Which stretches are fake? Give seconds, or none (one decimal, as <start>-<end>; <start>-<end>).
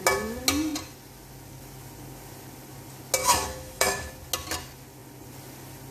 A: 3.2-4.1